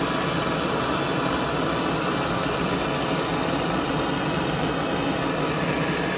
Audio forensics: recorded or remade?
recorded